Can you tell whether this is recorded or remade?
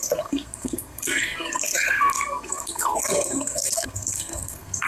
remade